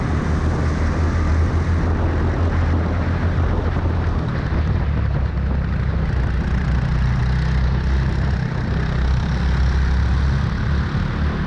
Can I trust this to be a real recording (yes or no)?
yes